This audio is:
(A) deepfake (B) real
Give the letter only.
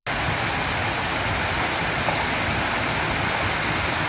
B